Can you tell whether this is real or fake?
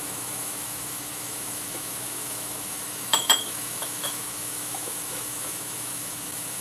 fake